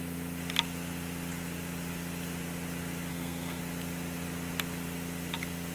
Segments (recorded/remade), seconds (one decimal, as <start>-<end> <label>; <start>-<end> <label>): 0.0-3.1 recorded; 3.1-3.6 remade; 3.6-5.7 recorded